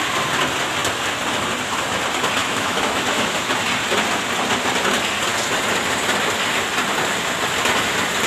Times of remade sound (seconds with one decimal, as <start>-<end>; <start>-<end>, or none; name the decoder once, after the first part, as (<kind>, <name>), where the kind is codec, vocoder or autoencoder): 2.4-3.5 (autoencoder, DAC-VAE)